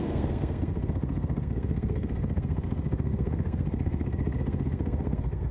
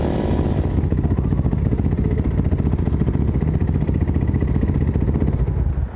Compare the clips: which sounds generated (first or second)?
first